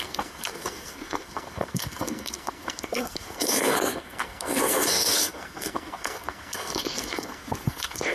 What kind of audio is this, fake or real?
fake